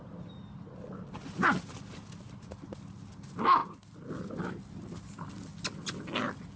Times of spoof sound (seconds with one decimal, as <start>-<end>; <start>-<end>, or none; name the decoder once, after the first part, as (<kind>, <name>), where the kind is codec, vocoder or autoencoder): none